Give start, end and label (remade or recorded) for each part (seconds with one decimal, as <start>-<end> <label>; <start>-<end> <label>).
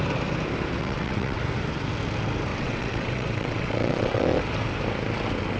0.0-0.8 recorded; 0.8-1.4 remade; 1.4-2.5 recorded; 2.5-4.4 remade; 4.4-5.6 recorded